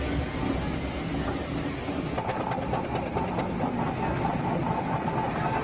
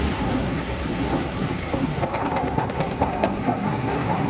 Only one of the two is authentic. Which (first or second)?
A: first